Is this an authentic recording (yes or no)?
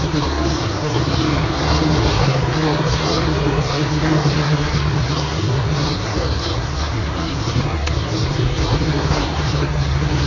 no